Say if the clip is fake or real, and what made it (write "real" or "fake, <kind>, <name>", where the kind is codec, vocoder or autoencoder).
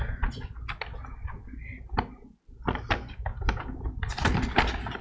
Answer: real